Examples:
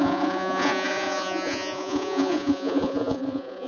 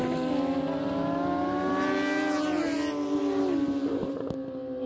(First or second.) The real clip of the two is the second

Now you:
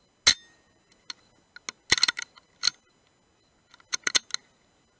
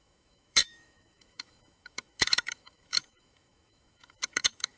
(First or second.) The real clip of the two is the first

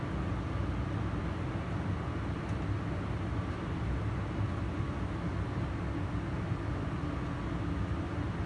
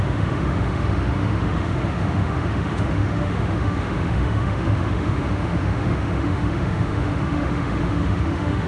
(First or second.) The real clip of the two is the first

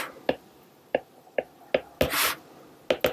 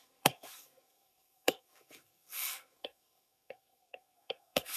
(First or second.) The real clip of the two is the first